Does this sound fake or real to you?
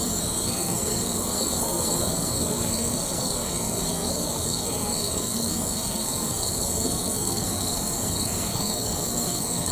fake